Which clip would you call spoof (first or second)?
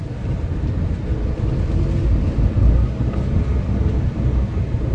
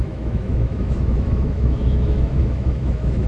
second